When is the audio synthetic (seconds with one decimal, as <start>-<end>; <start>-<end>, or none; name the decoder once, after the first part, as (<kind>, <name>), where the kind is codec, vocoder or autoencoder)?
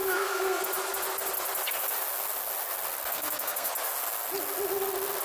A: 0.0-0.6 (codec, SNAC); 3.1-3.7